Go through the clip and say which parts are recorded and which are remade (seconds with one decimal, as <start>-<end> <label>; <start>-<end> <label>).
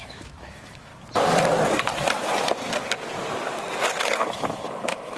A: 0.0-0.9 remade; 0.9-4.0 recorded; 4.0-5.2 remade